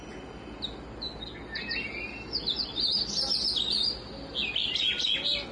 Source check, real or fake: real